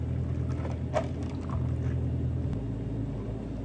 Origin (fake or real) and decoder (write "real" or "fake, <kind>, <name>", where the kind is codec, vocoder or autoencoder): real